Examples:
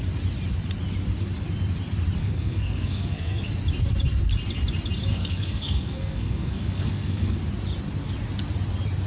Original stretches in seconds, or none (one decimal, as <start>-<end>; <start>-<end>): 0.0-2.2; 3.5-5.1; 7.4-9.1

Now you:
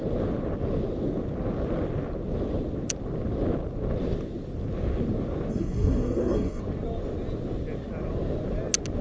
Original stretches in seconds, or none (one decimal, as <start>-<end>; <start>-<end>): 0.0-5.5; 6.6-9.0

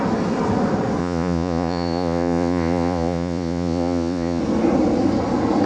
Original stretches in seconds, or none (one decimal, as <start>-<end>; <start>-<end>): 0.0-1.0; 4.4-5.7

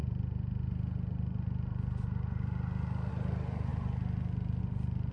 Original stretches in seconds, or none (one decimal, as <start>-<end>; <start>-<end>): 0.0-5.1

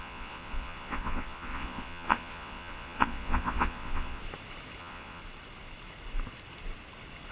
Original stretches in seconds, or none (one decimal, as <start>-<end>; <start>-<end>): 4.2-4.8; 5.2-7.3

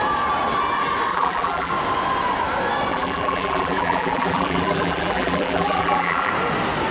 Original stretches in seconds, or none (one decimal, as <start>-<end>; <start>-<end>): 0.0-1.1; 1.7-2.9; 6.3-6.9

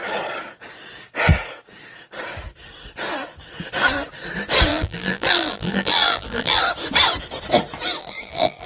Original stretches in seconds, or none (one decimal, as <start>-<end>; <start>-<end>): 0.0-4.7; 6.6-8.0